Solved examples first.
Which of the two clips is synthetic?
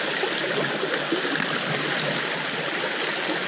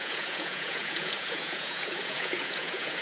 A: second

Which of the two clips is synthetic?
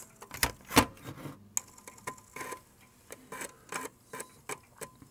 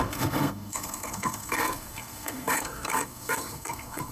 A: second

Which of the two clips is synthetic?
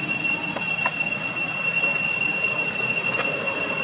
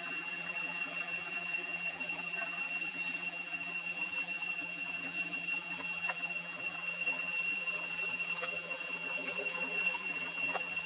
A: second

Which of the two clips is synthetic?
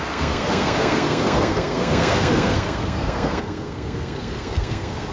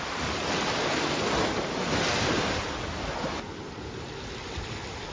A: first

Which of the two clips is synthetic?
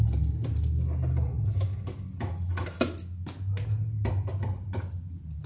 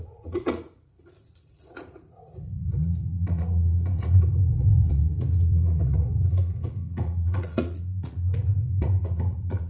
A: second